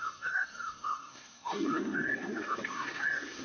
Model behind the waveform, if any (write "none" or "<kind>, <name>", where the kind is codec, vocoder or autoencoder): codec, SNAC